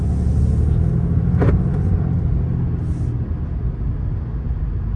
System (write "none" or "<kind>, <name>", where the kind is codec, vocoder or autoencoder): none